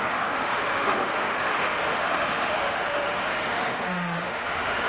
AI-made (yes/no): yes